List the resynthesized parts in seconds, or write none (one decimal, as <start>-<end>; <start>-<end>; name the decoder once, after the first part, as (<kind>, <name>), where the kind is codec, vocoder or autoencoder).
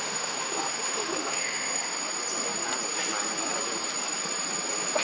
0.0-1.9 (autoencoder, DAC-VAE)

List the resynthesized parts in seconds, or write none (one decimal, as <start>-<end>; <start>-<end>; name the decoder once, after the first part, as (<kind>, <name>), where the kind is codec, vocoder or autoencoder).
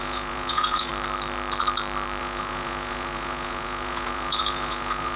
0.0-0.9 (vocoder, Vocos); 2.2-5.2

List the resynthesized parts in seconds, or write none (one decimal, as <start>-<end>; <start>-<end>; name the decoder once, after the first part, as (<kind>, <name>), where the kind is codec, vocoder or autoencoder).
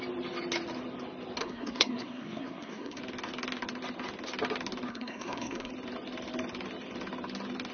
1.4-3.0 (codec, SNAC); 4.9-5.7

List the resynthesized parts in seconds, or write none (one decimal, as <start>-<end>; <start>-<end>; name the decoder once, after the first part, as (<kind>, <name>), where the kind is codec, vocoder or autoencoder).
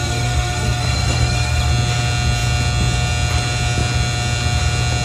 0.0-1.7 (codec, SNAC)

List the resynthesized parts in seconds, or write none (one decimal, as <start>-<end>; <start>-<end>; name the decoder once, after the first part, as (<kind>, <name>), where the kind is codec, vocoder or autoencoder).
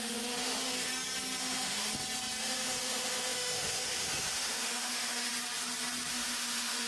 0.0-0.9 (autoencoder, DAC-VAE); 1.4-1.9; 2.4-5.3; 6.1-6.9